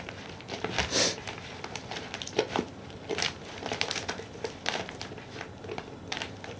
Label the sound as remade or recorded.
remade